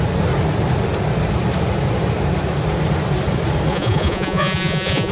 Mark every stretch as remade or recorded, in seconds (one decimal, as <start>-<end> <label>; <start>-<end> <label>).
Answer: 0.0-3.7 recorded; 3.7-5.1 remade